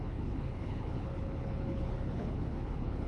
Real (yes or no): no